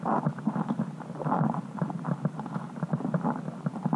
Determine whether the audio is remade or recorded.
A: recorded